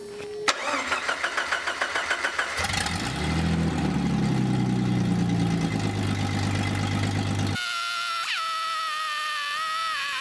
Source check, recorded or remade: recorded